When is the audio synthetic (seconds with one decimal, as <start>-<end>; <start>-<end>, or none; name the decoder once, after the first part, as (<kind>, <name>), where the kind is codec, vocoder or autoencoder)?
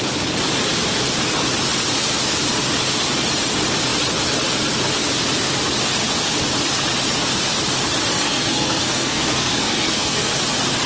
8.1-10.3 (codec, SNAC)